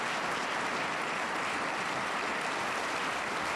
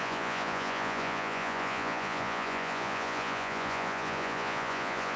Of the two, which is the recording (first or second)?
first